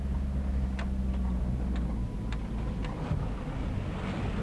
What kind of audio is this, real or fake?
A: real